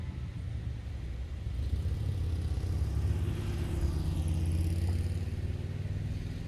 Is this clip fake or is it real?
real